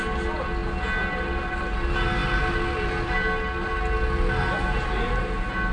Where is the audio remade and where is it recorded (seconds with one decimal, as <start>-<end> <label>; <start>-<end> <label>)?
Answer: 0.0-5.7 recorded